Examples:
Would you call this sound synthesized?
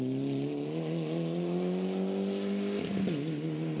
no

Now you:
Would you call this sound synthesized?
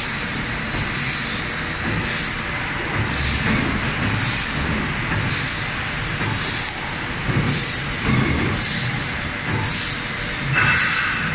no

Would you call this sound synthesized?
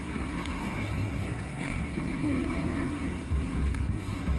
yes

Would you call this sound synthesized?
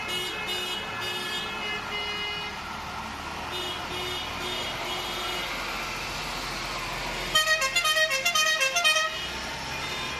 no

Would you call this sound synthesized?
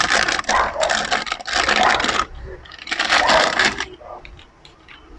no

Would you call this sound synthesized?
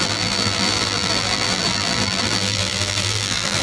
yes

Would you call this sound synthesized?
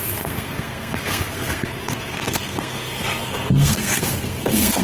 yes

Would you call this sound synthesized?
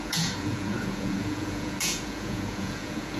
yes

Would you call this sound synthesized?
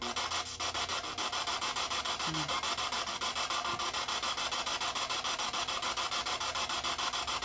no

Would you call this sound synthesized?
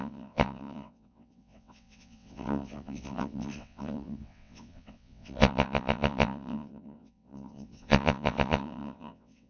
yes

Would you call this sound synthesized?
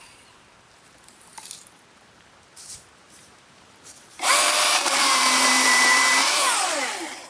yes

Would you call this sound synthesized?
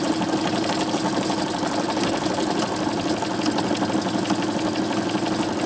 no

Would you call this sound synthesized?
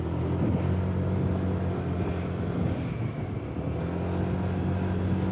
no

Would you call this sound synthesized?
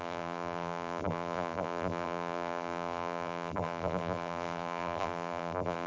yes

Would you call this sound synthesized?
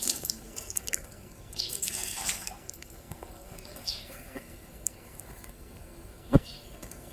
yes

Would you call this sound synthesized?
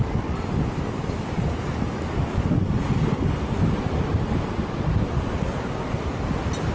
no